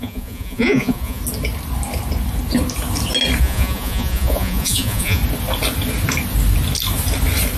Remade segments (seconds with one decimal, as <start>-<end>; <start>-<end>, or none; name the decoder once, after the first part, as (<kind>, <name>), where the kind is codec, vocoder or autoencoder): 0.0-1.2 (vocoder, Vocos); 3.4-5.2